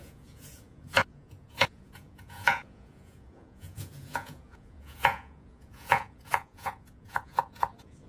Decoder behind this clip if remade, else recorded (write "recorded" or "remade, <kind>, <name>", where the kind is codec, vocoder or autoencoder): remade, vocoder, Vocos